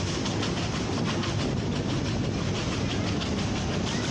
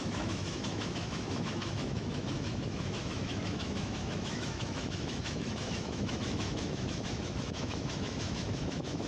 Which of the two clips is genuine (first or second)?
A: first